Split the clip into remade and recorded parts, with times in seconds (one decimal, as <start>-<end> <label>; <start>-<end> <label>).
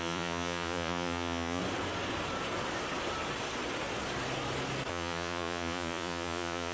0.0-1.6 remade; 1.6-4.9 recorded; 4.9-6.7 remade